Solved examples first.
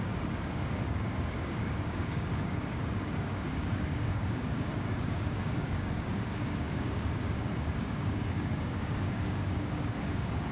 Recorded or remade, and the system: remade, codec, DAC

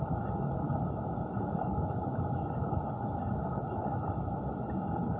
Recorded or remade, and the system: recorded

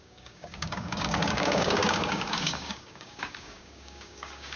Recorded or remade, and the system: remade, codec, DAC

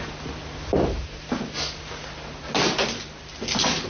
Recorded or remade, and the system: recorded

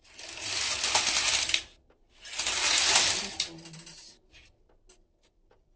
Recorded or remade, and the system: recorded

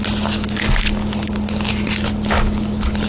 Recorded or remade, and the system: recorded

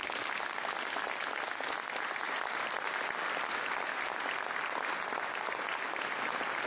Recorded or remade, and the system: recorded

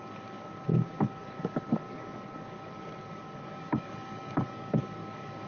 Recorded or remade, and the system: remade, codec, DAC